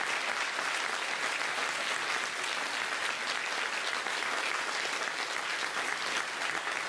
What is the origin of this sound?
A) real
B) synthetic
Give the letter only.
A